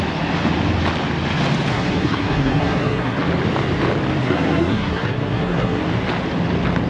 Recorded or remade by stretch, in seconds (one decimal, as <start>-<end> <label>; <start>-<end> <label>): 0.0-1.7 recorded; 1.7-3.2 remade; 3.2-4.2 recorded; 4.2-5.8 remade; 5.8-6.9 recorded